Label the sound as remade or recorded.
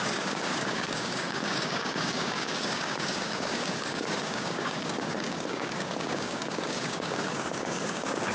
remade